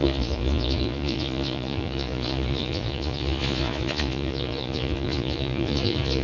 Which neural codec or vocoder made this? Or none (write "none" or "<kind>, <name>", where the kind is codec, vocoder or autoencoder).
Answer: vocoder, Vocos